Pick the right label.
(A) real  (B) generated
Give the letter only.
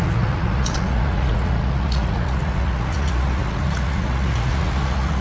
B